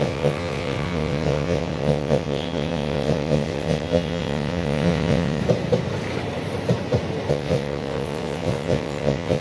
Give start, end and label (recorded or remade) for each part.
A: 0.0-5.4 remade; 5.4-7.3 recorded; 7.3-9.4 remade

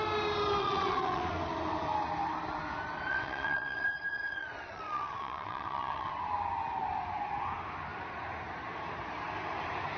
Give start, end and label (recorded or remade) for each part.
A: 0.0-0.6 recorded; 0.6-1.3 remade; 1.3-3.1 recorded; 3.1-6.1 remade; 6.1-10.0 recorded

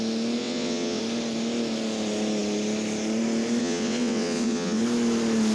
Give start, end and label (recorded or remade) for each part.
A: 0.0-0.4 recorded; 0.4-1.0 remade; 1.0-3.6 recorded; 3.6-4.8 remade; 4.8-5.5 recorded

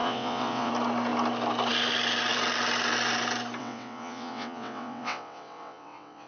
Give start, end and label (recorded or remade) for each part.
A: 0.0-0.7 remade; 0.7-3.6 recorded; 3.6-6.3 remade

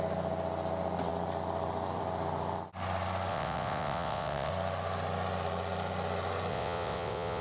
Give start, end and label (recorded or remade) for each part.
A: 0.0-3.3 recorded; 3.3-4.5 remade; 4.5-6.5 recorded; 6.5-7.4 remade

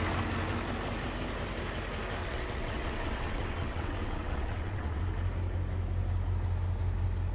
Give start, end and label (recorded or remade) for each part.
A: 0.0-2.2 recorded; 2.2-5.0 remade; 5.0-7.3 recorded